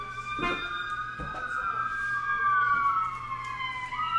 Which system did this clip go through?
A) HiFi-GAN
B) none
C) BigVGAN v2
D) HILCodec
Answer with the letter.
B